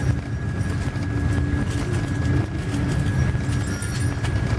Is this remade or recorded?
recorded